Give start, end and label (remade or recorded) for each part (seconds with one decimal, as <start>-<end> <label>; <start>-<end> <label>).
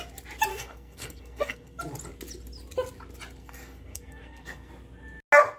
0.0-0.5 recorded; 0.5-1.8 remade; 1.8-3.4 recorded; 3.4-4.7 remade; 4.7-5.6 recorded